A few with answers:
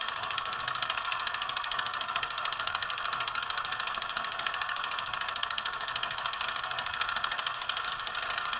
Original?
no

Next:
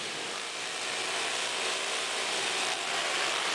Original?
yes